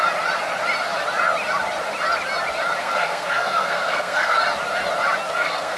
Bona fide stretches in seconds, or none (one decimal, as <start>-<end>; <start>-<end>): 0.0-2.8; 4.4-5.3